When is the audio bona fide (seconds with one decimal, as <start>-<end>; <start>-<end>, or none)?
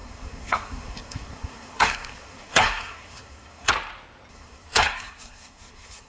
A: 3.7-4.3